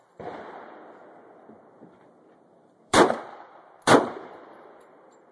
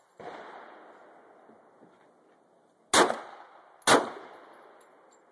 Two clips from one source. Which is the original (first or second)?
second